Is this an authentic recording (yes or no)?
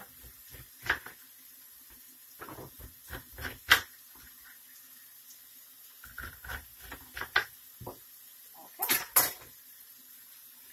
yes